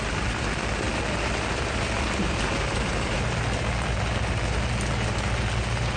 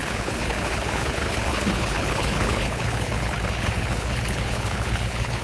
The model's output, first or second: second